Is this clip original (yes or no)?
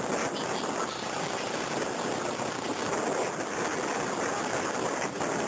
yes